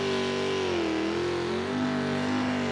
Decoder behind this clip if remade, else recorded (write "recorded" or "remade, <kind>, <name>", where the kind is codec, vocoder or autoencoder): recorded